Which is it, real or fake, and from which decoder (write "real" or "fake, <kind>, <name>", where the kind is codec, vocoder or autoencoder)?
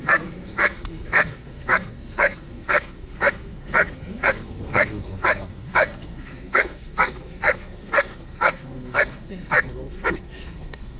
fake, codec, SNAC